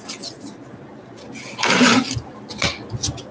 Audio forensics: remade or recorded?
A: recorded